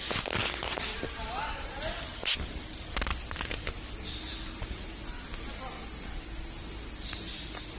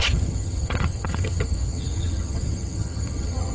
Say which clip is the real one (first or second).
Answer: first